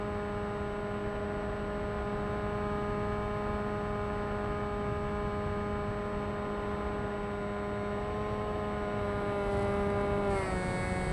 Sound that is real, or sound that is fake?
real